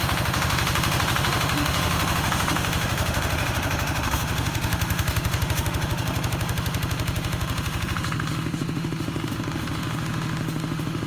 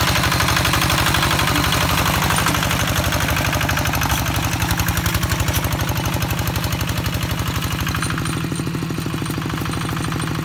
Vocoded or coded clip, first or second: first